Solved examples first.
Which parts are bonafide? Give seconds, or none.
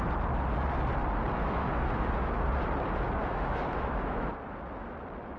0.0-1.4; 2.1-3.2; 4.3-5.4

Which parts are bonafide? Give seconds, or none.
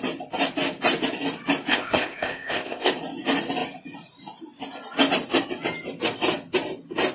0.0-1.7; 2.9-7.1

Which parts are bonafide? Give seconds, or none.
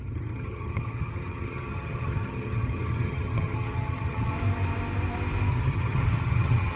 4.3-5.5